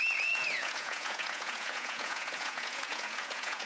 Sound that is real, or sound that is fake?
fake